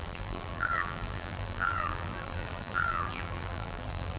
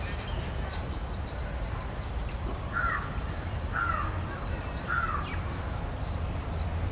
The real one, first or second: second